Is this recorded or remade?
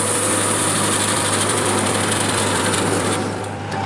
remade